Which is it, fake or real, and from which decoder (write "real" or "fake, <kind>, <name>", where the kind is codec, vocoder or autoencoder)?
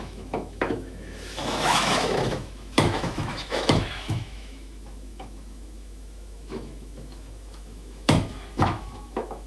fake, autoencoder, DAC-VAE